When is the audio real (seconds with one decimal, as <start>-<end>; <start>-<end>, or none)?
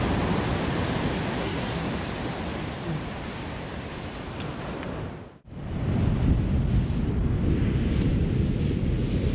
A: 0.0-1.4; 1.9-9.3